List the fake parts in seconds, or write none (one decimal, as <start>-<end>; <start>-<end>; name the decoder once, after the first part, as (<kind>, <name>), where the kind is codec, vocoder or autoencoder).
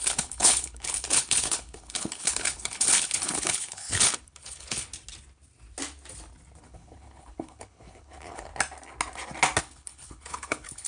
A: 0.0-4.9 (codec, HILCodec); 6.6-8.5; 9.6-10.9